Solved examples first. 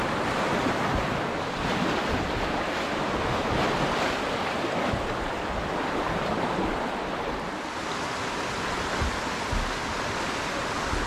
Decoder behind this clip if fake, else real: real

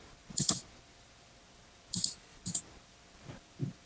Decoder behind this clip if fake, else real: fake, vocoder, BigVGAN v2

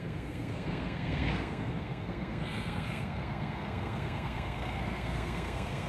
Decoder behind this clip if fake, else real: fake, codec, SNAC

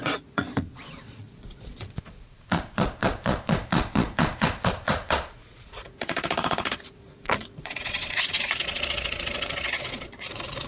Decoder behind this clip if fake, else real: fake, vocoder, Vocos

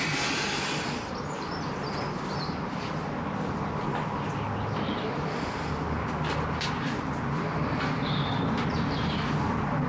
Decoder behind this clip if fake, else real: real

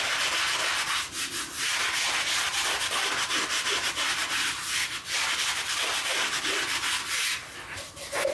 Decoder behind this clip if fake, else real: real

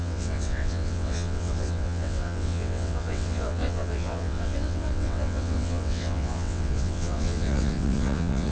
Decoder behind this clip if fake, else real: fake, vocoder, WaveNeXt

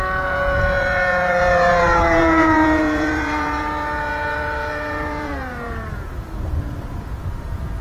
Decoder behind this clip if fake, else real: fake, vocoder, Vocos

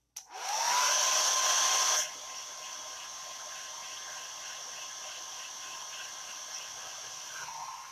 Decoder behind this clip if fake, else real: real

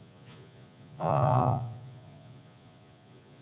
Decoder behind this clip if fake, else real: fake, vocoder, Vocos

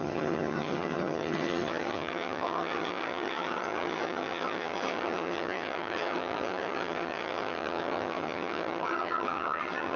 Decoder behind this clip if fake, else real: fake, vocoder, HiFi-GAN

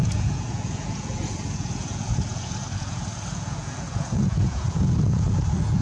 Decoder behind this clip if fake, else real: fake, vocoder, Vocos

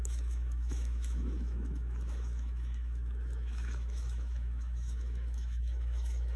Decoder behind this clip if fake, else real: fake, autoencoder, DAC-VAE